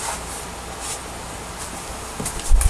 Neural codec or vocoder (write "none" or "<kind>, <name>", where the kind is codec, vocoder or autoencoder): none